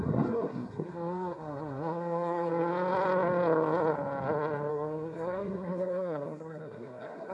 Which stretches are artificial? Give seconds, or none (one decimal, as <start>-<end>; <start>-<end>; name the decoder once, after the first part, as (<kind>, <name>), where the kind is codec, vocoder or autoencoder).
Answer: 0.0-2.5 (codec, SNAC); 4.7-7.3